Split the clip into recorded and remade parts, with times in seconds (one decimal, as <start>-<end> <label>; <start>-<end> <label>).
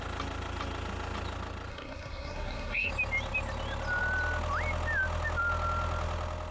0.0-1.7 recorded; 1.7-2.9 remade; 2.9-6.5 recorded